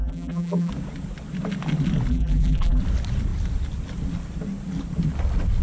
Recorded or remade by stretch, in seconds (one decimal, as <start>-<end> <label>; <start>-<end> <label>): 0.0-0.7 remade; 0.7-2.1 recorded; 2.1-2.8 remade; 2.8-5.6 recorded